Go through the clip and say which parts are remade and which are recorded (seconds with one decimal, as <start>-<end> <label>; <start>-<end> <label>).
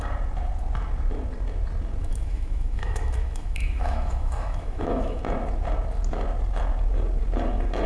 0.0-2.0 recorded; 2.0-5.2 remade; 5.2-7.9 recorded